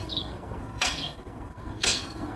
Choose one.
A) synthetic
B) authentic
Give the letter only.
A